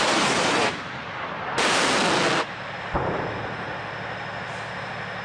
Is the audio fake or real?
real